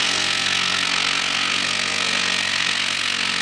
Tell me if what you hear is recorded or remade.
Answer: remade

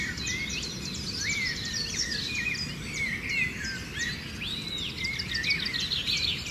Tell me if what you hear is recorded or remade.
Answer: recorded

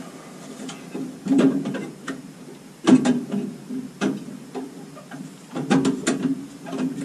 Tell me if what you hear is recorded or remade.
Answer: recorded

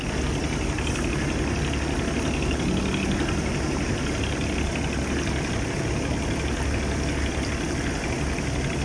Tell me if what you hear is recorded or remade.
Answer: recorded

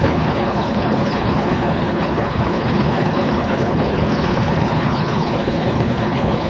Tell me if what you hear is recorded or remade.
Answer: remade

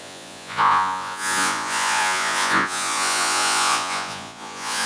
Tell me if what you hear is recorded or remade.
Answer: remade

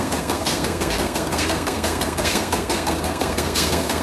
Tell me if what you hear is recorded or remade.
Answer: remade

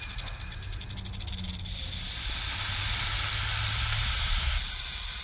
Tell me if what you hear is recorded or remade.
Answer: recorded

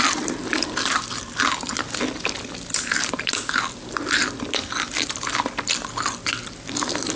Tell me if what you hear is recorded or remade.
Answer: recorded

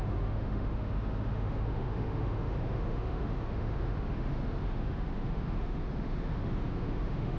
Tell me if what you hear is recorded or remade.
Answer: remade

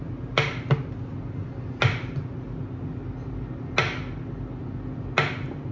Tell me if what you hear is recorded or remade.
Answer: recorded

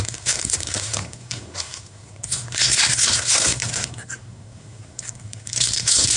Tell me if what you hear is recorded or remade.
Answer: remade